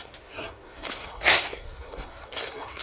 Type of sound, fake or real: fake